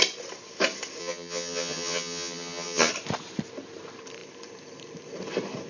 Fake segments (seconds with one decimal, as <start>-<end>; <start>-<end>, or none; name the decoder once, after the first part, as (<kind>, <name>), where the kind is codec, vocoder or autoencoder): 1.0-2.9 (vocoder, HiFi-GAN)